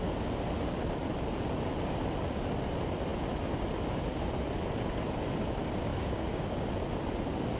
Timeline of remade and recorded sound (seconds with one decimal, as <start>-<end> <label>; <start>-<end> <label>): 0.0-5.9 recorded; 5.9-6.7 remade; 6.7-7.6 recorded